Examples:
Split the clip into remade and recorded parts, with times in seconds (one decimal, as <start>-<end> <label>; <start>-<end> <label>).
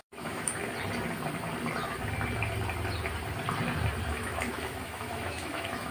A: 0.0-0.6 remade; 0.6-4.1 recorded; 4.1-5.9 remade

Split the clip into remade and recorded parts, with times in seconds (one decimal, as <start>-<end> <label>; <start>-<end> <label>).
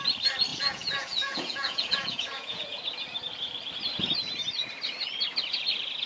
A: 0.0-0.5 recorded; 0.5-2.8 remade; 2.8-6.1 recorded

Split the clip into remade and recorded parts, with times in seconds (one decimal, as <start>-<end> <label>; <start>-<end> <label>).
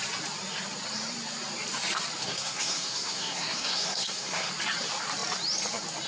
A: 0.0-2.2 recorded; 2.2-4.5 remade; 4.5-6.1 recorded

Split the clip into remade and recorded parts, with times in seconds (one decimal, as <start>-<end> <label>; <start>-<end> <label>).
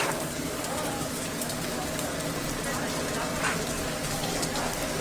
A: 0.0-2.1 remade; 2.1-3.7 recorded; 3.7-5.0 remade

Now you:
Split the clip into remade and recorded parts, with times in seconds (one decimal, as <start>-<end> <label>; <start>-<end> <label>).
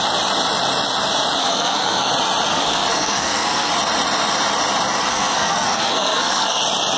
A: 0.0-1.4 recorded; 1.4-2.1 remade; 2.1-2.5 recorded; 2.5-3.7 remade; 3.7-5.1 recorded; 5.1-6.6 remade; 6.6-7.0 recorded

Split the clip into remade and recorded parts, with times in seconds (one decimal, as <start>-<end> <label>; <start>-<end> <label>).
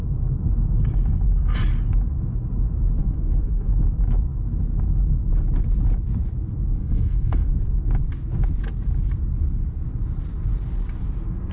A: 0.0-3.0 recorded; 3.0-3.8 remade; 3.8-6.8 recorded; 6.8-7.5 remade; 7.5-11.5 recorded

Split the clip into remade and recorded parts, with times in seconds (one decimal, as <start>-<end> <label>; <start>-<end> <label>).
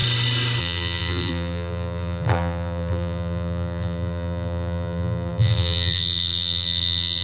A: 0.0-0.6 recorded; 0.6-7.2 remade